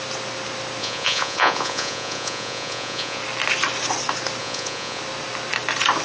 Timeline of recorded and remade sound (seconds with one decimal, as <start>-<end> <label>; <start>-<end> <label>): 0.0-0.8 recorded; 0.8-3.2 remade; 3.2-4.4 recorded; 4.4-5.0 remade; 5.0-6.0 recorded